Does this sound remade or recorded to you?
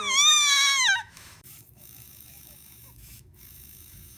remade